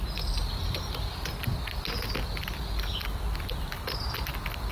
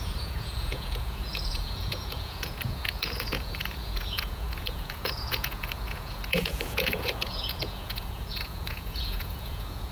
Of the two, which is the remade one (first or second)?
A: second